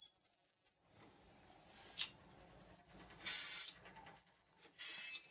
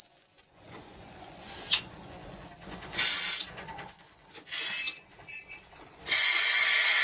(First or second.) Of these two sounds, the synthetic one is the second